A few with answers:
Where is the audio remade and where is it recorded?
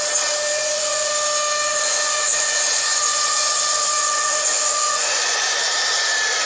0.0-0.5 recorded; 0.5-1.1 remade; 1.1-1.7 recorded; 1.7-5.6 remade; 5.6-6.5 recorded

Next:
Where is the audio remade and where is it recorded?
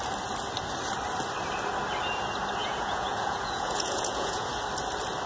0.0-2.6 recorded; 2.6-4.5 remade; 4.5-5.3 recorded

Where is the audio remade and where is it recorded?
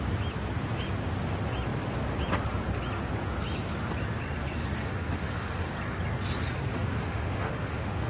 0.0-4.8 recorded; 4.8-5.7 remade; 5.7-6.7 recorded; 6.7-8.1 remade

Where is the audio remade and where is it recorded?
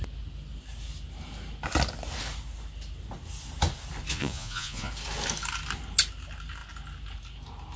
0.0-4.1 recorded; 4.1-4.9 remade; 4.9-7.8 recorded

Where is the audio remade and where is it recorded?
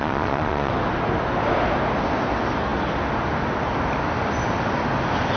0.0-0.7 remade; 0.7-5.4 recorded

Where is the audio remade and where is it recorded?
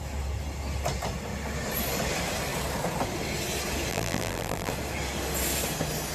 0.0-3.9 recorded; 3.9-4.7 remade; 4.7-6.1 recorded